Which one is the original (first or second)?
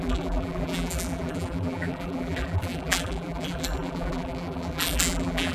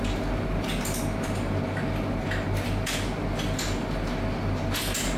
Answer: second